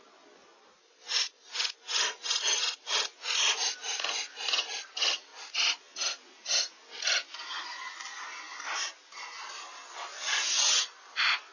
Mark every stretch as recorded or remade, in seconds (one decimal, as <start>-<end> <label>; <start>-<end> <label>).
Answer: 0.0-11.5 recorded